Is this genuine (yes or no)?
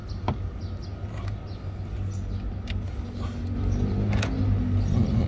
yes